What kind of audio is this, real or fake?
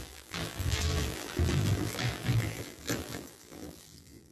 fake